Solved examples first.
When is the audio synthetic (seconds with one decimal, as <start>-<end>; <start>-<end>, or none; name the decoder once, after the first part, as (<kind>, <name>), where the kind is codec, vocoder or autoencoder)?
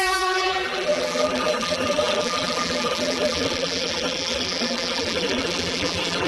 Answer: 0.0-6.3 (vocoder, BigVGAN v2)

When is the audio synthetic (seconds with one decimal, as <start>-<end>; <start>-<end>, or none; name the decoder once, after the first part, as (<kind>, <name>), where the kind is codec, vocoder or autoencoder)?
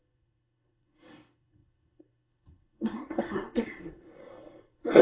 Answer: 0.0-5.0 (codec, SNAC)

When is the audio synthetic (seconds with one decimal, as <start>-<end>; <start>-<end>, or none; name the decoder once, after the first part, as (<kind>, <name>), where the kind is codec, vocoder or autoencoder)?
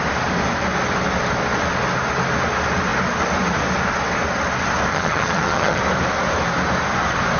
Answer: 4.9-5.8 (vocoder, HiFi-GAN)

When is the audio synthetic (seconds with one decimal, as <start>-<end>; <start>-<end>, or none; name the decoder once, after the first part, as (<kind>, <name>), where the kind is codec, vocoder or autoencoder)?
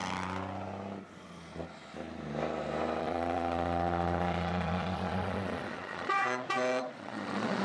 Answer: 3.0-7.6 (vocoder, Vocos)